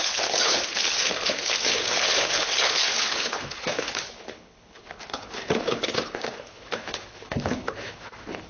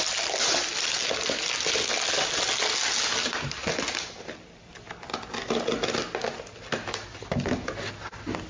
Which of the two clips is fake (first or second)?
first